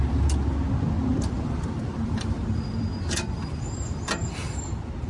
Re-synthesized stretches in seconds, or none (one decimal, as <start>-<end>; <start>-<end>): 1.1-4.2